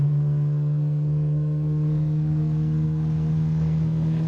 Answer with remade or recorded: remade